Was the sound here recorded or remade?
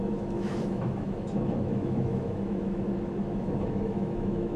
remade